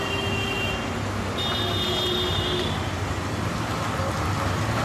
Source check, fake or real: real